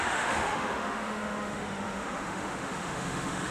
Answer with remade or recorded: remade